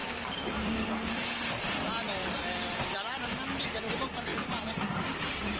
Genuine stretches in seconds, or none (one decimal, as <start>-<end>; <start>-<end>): 1.1-5.6